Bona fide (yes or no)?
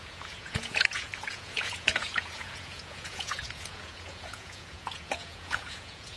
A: no